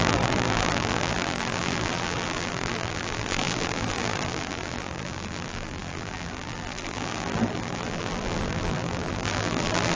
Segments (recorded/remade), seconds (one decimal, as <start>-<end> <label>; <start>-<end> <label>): 0.0-9.9 remade